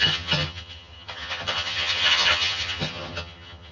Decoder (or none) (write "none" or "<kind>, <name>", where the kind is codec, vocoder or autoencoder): vocoder, HiFi-GAN